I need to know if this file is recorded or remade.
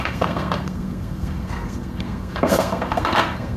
remade